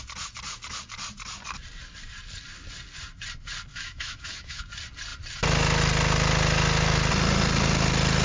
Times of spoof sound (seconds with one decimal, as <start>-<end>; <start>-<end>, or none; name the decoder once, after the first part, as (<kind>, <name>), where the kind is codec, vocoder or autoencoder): 3.7-4.6 (autoencoder, DAC-VAE)